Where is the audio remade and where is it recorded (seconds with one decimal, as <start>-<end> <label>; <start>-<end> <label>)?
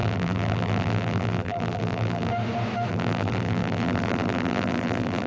0.0-2.3 remade; 2.3-2.9 recorded; 2.9-5.3 remade